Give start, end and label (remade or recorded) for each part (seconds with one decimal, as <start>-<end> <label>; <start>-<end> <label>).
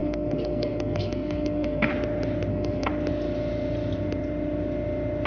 0.0-1.9 remade; 1.9-2.5 recorded; 2.5-2.9 remade; 2.9-5.3 recorded